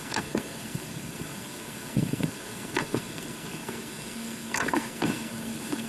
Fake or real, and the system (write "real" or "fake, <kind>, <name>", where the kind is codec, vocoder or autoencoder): fake, codec, SNAC